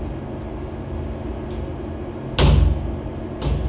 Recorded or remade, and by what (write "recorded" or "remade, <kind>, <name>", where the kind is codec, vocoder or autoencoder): recorded